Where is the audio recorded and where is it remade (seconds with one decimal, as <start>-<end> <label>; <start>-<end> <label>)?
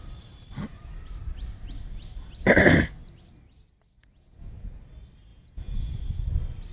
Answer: 0.0-4.0 recorded; 4.0-4.7 remade; 4.7-5.3 recorded; 5.3-6.0 remade; 6.0-6.7 recorded